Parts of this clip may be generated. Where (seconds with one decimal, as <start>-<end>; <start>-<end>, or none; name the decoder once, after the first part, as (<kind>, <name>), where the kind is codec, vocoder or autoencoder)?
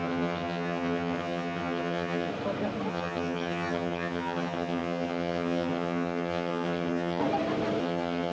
0.0-2.3 (vocoder, HiFi-GAN); 2.9-7.2; 7.8-8.3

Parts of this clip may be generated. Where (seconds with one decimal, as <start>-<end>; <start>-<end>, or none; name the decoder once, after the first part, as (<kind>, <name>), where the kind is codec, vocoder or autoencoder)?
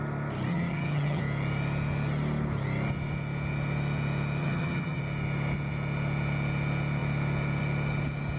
0.5-1.2 (vocoder, HiFi-GAN); 4.4-5.0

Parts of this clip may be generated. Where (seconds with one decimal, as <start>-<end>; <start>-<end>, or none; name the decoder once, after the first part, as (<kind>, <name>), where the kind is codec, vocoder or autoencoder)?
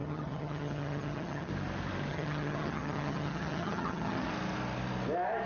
0.0-1.5 (vocoder, HiFi-GAN); 2.1-4.3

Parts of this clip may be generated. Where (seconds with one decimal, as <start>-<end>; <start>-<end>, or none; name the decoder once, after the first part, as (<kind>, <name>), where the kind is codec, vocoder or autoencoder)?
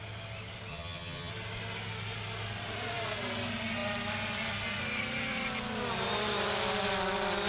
0.7-1.3 (vocoder, HiFi-GAN)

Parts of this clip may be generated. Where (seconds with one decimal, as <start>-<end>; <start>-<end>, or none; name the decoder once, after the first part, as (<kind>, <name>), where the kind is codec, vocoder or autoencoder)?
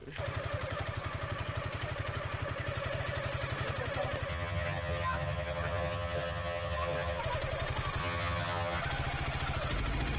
4.3-7.2 (vocoder, HiFi-GAN); 8.0-8.8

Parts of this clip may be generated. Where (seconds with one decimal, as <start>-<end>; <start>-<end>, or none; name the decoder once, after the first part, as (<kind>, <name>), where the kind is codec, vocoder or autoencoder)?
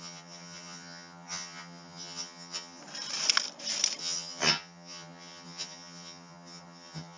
0.0-2.8 (vocoder, HiFi-GAN); 4.0-7.2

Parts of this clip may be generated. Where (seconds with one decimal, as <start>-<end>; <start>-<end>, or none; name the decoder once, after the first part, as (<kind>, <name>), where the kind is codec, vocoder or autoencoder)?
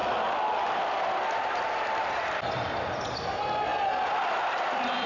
none